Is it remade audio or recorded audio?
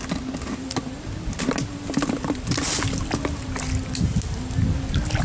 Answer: recorded